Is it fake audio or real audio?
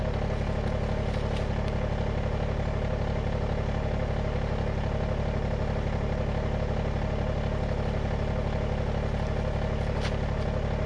real